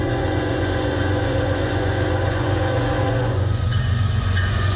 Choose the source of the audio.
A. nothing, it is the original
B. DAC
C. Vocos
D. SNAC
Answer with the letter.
C